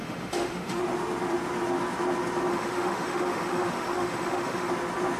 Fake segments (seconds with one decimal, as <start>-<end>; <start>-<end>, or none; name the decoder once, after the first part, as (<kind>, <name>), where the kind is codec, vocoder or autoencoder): 0.0-0.8 (autoencoder, DAC-VAE); 2.5-4.7